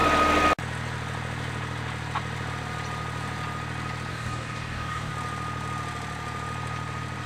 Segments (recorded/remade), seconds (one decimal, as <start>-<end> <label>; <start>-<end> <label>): 0.0-4.1 recorded; 4.1-5.1 remade; 5.1-7.3 recorded